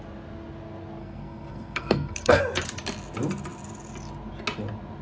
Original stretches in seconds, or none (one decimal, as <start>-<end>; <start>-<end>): 0.0-1.0; 2.4-5.0